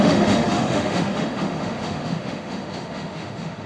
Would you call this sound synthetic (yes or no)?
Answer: yes